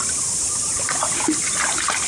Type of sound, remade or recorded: recorded